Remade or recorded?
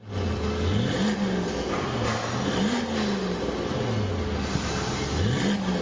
recorded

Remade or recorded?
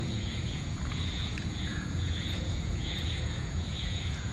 remade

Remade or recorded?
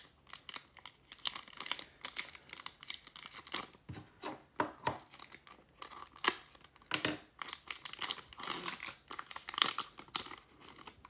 recorded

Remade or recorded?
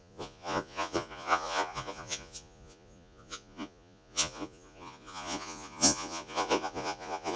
remade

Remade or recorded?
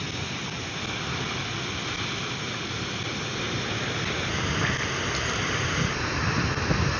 recorded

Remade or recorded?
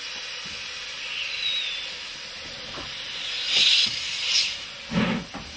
recorded